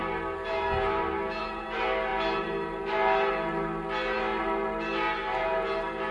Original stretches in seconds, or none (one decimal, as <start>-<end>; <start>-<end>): 0.0-6.1